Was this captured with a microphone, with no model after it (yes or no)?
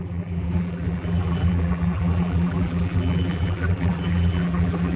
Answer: no